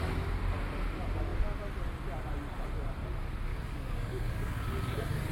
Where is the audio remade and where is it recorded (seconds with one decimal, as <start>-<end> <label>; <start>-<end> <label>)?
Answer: 0.0-3.5 recorded; 3.5-5.3 remade